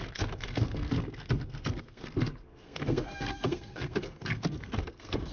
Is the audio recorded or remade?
remade